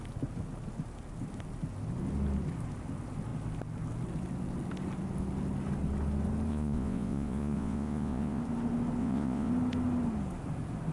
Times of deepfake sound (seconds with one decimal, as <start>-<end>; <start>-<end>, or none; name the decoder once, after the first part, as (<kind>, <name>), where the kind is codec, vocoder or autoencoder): 6.5-8.4 (vocoder, Vocos); 9.0-9.5